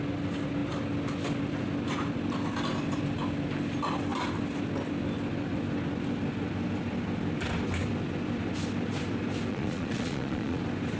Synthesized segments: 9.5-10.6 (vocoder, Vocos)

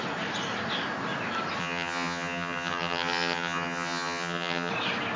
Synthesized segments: 1.6-4.7 (vocoder, HiFi-GAN)

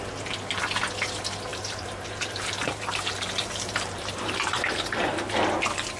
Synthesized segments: 1.5-5.1 (vocoder, BigVGAN v2)

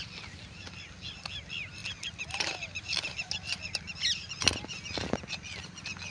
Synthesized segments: none

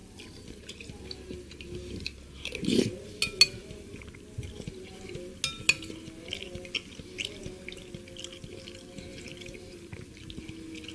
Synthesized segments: 0.0-0.6 (vocoder, BigVGAN v2); 9.1-9.9

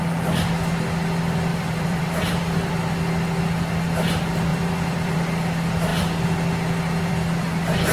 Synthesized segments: 1.5-2.7 (vocoder, BigVGAN v2); 4.5-5.2

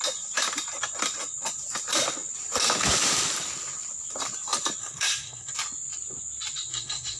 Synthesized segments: 4.8-5.5 (codec, SNAC); 6.7-7.2

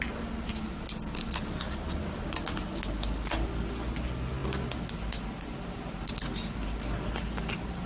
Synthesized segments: none